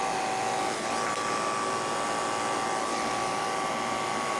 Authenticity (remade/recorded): recorded